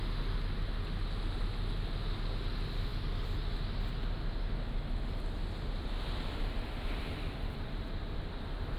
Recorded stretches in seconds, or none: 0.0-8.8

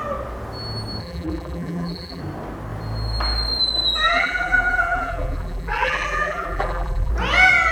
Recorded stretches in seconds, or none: 0.0-1.0; 2.2-4.0; 7.1-7.7

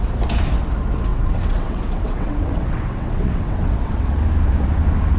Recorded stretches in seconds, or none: 0.0-1.1; 4.2-5.2